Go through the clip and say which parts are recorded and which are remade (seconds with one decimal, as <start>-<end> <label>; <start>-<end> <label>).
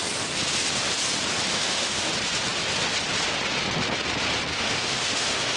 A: 0.0-1.5 recorded; 1.5-2.1 remade; 2.1-4.5 recorded; 4.5-5.6 remade